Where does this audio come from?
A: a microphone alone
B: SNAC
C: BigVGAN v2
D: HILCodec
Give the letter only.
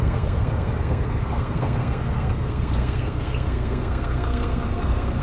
B